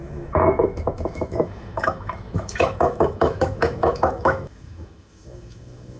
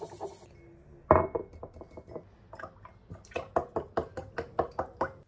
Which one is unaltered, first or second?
second